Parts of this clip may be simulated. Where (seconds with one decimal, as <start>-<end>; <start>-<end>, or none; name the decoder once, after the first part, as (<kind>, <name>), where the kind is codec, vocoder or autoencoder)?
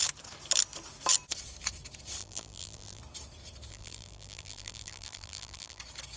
2.2-3.0 (vocoder, BigVGAN v2); 3.7-5.8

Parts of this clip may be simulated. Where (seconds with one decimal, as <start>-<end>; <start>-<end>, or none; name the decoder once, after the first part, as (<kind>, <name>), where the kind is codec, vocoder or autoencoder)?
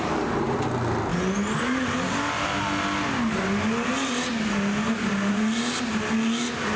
none